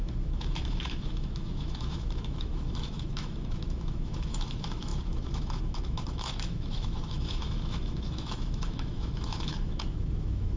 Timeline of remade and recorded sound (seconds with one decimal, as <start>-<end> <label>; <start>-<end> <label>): 0.0-10.6 remade